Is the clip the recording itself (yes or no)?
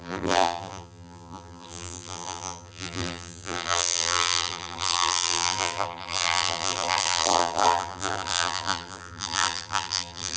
no